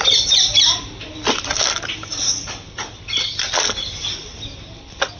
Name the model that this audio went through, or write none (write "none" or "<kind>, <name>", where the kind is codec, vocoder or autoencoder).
none